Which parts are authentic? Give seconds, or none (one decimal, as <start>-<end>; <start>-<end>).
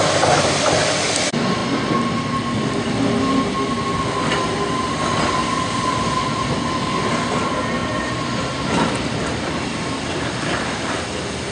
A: 0.0-11.5